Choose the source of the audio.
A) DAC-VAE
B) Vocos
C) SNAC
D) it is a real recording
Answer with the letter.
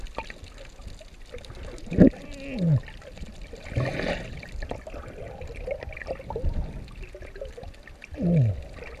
D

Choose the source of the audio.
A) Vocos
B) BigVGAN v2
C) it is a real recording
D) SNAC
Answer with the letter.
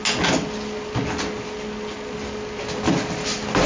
C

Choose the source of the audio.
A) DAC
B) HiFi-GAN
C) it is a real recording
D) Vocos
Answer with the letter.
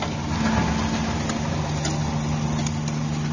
C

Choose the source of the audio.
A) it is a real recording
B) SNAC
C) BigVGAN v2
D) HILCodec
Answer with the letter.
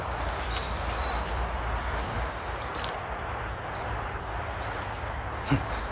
C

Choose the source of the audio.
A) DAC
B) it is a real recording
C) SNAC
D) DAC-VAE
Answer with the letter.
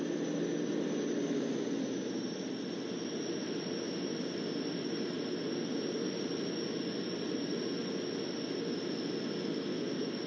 B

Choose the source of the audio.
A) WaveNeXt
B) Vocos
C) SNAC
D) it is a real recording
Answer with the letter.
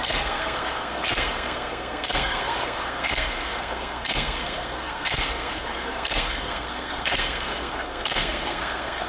C